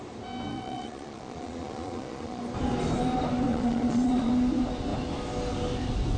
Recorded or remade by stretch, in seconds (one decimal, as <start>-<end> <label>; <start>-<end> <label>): 0.0-0.5 recorded; 0.5-2.4 remade; 2.4-3.5 recorded; 3.5-4.3 remade; 4.3-6.2 recorded